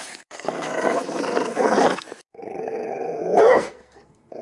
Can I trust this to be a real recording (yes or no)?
no